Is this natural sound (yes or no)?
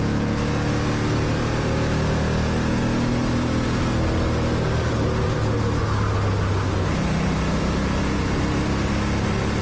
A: yes